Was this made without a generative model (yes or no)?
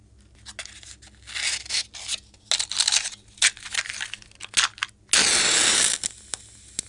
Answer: yes